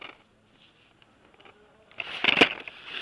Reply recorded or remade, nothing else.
recorded